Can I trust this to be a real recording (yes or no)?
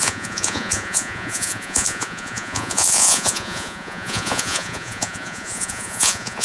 no